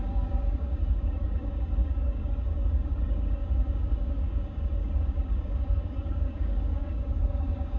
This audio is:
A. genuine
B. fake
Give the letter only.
B